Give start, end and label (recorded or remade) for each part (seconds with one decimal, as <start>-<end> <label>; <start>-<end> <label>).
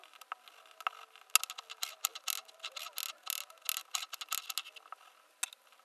0.0-5.8 recorded